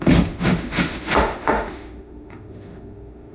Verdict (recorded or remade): remade